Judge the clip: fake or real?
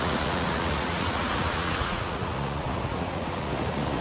fake